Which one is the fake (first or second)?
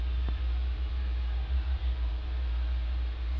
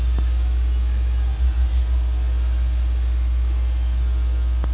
first